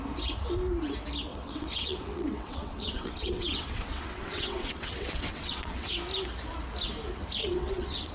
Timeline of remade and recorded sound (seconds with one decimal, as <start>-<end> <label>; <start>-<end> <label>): 0.0-1.3 recorded; 1.3-5.9 remade; 5.9-7.4 recorded; 7.4-8.1 remade